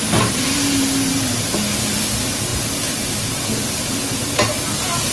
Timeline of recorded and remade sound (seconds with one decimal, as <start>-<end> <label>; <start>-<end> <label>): 0.0-5.1 recorded